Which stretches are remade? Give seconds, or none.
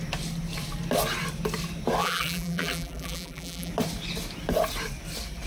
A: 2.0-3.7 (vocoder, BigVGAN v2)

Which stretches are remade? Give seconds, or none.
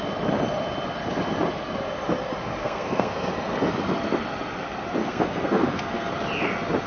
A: 2.6-3.3 (codec, SNAC); 5.0-6.1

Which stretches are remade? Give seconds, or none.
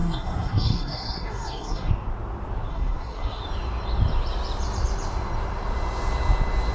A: 0.0-1.9 (codec, SNAC); 2.7-3.4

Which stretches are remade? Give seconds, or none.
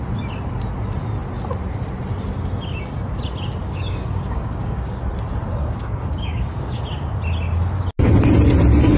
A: 3.6-5.0 (codec, DAC); 5.6-6.8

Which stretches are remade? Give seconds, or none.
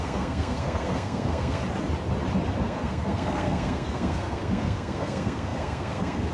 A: 0.0-1.6 (codec, SNAC); 2.6-6.3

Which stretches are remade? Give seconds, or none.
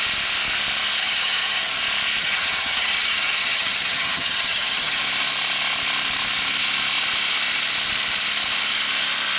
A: 1.0-1.8 (vocoder, HiFi-GAN); 2.2-5.0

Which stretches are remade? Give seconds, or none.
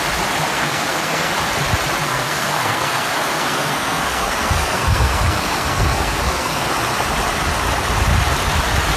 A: 0.5-1.3 (codec, SNAC); 2.0-6.7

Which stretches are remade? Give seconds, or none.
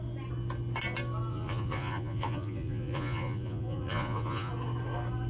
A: 1.3-4.5 (vocoder, Vocos)